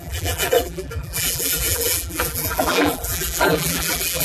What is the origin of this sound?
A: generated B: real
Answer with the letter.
A